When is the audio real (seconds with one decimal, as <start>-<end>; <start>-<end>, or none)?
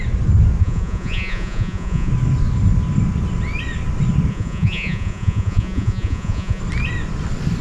0.0-0.6; 2.1-4.3; 6.6-7.6